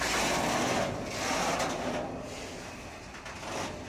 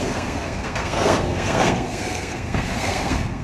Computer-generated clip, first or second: second